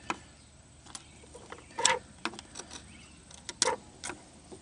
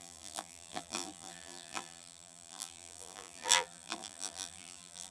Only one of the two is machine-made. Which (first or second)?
second